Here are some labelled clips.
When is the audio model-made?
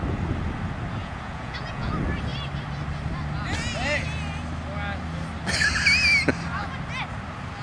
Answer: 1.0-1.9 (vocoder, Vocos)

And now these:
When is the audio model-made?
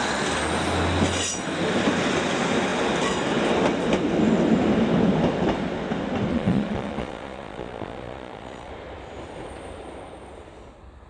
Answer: 6.3-8.7 (vocoder, Vocos)